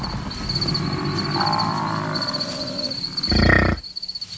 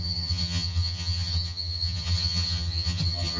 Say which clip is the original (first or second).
first